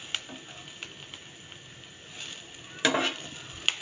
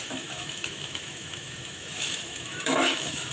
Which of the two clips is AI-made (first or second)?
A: second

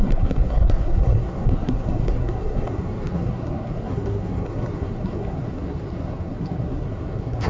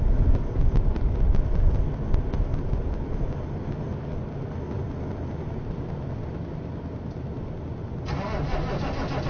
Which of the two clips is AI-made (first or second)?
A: first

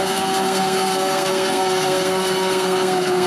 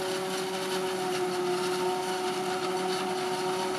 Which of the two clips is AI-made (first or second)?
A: first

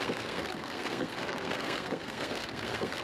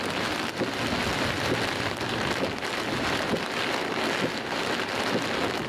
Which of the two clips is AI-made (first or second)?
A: first